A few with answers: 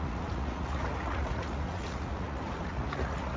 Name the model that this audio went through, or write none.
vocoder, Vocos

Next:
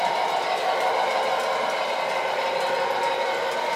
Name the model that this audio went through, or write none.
none